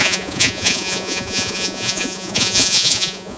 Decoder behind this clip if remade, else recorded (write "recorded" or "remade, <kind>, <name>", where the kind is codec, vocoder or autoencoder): remade, vocoder, Vocos